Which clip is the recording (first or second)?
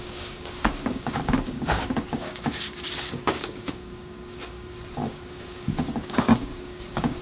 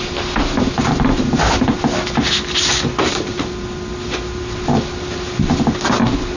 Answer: second